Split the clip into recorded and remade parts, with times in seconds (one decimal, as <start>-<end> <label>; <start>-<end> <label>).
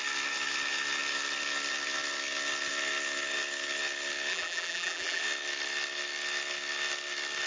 0.0-4.3 recorded; 4.3-5.2 remade; 5.2-7.5 recorded